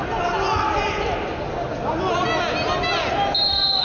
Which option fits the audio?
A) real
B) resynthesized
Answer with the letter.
A